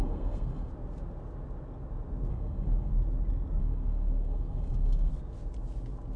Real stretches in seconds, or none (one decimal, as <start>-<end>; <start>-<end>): 0.7-2.3; 2.9-3.6; 5.1-6.2